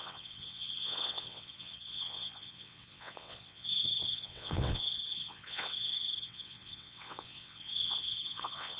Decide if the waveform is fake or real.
fake